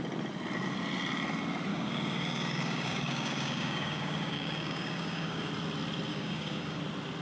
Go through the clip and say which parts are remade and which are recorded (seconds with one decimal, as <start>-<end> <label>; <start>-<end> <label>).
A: 0.0-1.7 recorded; 1.7-5.5 remade; 5.5-6.1 recorded; 6.1-6.8 remade; 6.8-7.2 recorded